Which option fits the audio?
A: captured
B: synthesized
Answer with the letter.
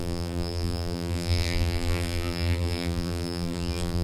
B